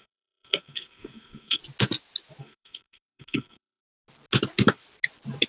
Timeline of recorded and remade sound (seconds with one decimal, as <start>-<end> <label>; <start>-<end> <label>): 0.0-1.6 remade; 1.6-2.4 recorded; 2.4-3.8 remade; 3.8-5.5 recorded